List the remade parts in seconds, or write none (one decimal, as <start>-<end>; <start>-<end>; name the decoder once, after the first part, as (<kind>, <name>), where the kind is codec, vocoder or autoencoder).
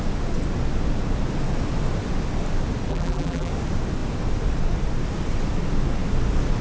2.9-3.5 (vocoder, BigVGAN v2)